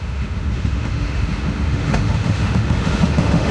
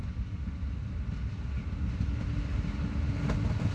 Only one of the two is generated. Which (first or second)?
first